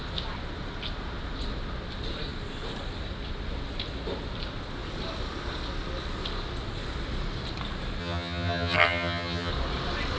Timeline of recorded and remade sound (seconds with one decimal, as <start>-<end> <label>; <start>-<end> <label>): 0.0-8.0 recorded; 8.0-9.5 remade; 9.5-10.2 recorded

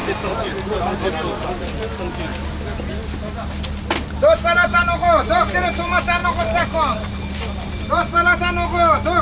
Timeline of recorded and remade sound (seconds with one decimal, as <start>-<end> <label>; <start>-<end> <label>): 0.0-0.8 remade; 0.8-6.2 recorded; 6.2-8.4 remade; 8.4-9.2 recorded